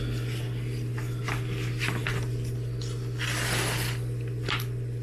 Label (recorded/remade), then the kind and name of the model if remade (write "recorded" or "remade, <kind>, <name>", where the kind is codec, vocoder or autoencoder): recorded